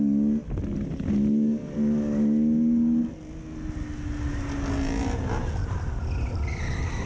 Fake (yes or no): no